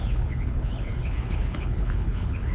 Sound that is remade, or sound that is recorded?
remade